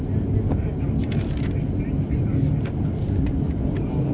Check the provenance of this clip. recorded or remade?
recorded